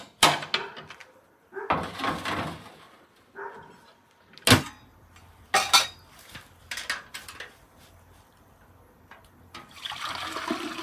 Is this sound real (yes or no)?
yes